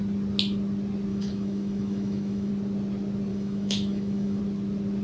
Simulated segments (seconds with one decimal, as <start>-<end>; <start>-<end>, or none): 1.1-2.5; 3.3-4.4